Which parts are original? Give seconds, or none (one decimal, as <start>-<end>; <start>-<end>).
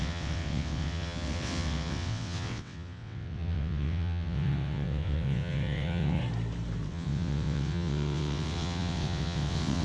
6.2-6.9